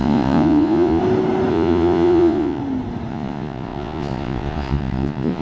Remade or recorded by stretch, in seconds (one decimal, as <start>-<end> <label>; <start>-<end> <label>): 0.0-1.0 remade; 1.0-1.5 recorded; 1.5-2.6 remade; 2.6-3.1 recorded; 3.1-5.4 remade